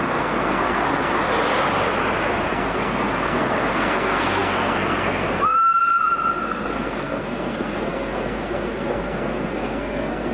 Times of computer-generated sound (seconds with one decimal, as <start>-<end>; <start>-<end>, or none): 0.0-1.2; 2.5-5.8; 6.4-10.3